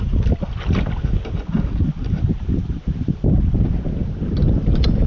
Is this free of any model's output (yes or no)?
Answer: yes